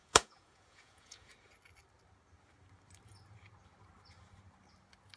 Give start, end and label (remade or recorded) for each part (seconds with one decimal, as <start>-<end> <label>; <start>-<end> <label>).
0.0-1.3 remade; 1.3-5.2 recorded